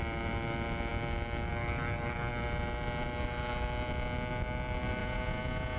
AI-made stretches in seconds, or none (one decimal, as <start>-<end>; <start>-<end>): 5.0-5.8